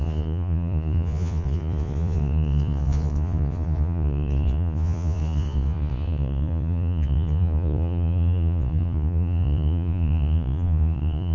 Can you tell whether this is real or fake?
fake